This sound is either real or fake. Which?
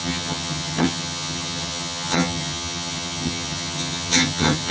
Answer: fake